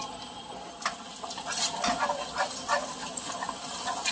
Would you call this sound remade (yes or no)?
no